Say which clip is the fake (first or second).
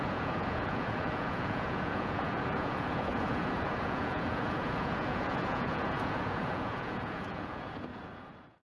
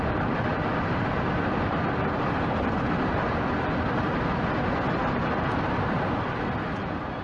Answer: first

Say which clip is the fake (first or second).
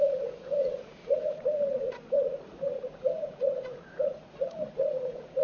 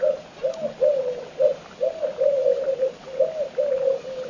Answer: first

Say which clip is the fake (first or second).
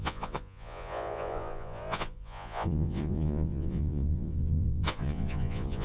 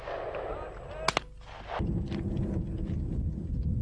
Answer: first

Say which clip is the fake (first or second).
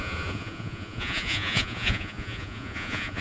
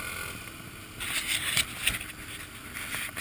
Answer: first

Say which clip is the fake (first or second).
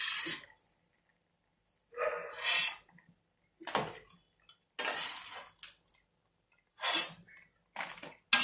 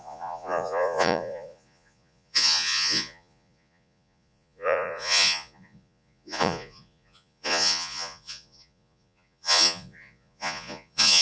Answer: second